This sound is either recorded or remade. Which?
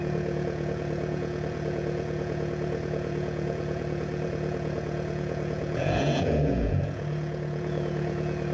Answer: remade